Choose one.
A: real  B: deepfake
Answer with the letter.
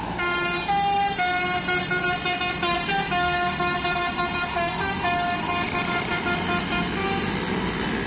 A